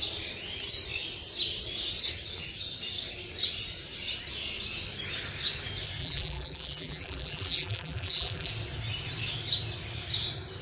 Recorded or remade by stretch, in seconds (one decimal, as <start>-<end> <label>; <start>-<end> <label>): 0.0-6.0 recorded; 6.0-8.5 remade; 8.5-10.6 recorded